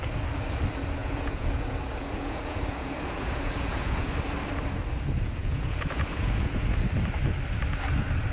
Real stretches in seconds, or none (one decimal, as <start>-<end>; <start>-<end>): 0.0-1.0; 4.1-5.4; 6.8-8.3